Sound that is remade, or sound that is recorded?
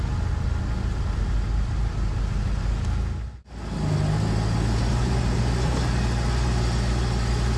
recorded